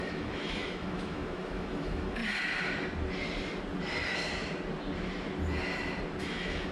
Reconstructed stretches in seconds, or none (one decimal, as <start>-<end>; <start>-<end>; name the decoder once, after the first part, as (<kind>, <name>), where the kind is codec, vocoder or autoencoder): 0.0-2.2 (autoencoder, DAC-VAE); 6.2-6.7